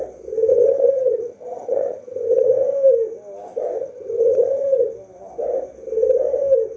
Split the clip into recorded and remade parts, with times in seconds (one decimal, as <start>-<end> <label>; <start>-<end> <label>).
0.0-0.5 recorded; 0.5-2.4 remade; 2.4-3.8 recorded; 3.8-4.9 remade; 4.9-6.8 recorded